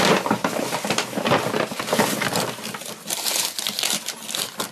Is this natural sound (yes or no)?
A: yes